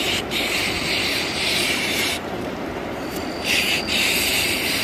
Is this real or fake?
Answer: fake